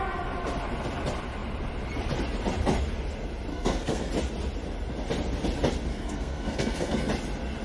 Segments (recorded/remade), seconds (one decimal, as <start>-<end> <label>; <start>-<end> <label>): 0.0-3.5 recorded; 3.5-4.1 remade; 4.1-5.9 recorded; 5.9-7.1 remade; 7.1-7.6 recorded